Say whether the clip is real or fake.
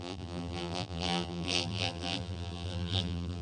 fake